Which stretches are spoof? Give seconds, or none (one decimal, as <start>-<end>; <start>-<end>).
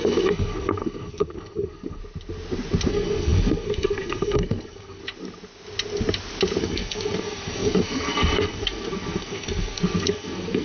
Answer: 0.0-2.0; 2.9-5.0; 6.6-10.6